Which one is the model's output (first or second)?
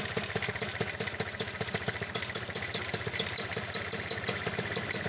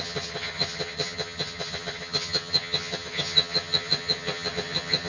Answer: second